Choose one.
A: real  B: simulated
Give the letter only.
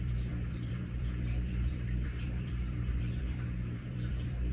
B